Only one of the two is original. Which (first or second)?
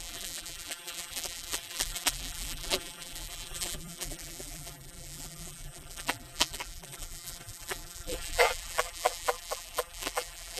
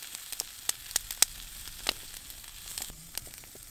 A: second